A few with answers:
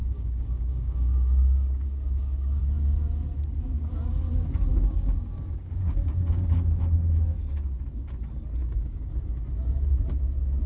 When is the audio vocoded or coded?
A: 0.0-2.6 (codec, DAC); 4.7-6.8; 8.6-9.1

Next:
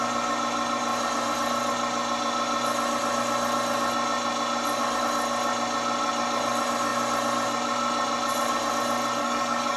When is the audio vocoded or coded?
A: 9.2-9.8 (codec, DAC)

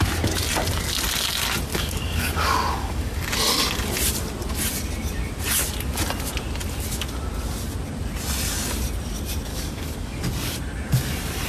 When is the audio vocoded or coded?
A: 1.7-3.3 (codec, DAC); 9.5-10.3